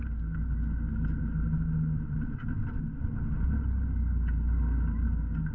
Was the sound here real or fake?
real